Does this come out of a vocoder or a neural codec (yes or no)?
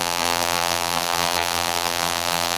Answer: yes